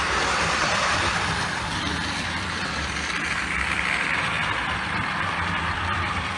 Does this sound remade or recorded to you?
remade